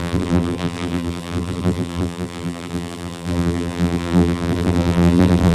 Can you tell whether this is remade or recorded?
remade